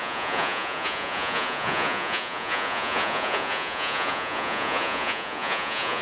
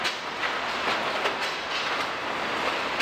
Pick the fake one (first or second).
first